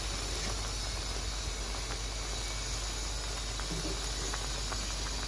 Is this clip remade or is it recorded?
recorded